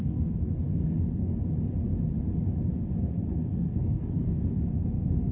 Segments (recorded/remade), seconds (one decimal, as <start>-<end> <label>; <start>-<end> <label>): 0.0-1.3 remade; 1.3-3.0 recorded; 3.0-5.3 remade